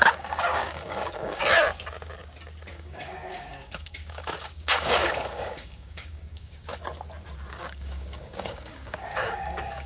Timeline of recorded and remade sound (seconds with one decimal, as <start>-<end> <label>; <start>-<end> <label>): 0.0-1.4 remade; 1.4-2.7 recorded; 2.7-6.7 remade; 6.7-7.5 recorded; 7.5-9.9 remade